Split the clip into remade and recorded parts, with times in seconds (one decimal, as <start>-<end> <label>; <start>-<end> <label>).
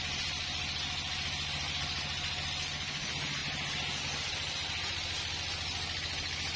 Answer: 0.0-6.6 recorded